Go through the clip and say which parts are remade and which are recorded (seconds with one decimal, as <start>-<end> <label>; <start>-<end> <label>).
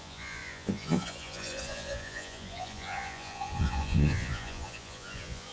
0.0-5.5 remade